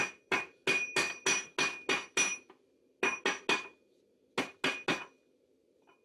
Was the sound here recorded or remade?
recorded